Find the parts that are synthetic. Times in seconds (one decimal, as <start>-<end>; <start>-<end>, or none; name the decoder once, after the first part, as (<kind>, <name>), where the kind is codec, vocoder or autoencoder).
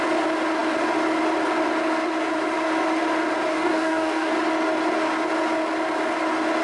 3.5-4.3 (codec, DAC)